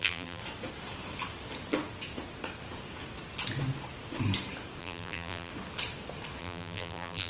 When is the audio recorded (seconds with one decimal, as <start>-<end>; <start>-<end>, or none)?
0.4-4.8; 5.5-6.4